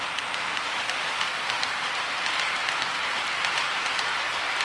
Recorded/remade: recorded